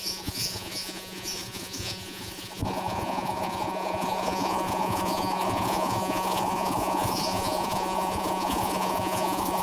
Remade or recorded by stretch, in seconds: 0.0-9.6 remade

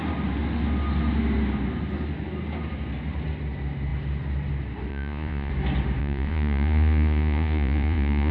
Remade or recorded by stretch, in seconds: 0.0-4.9 recorded; 4.9-5.5 remade; 5.5-6.0 recorded; 6.0-8.3 remade